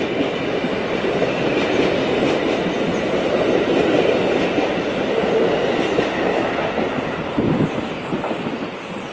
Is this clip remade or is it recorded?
recorded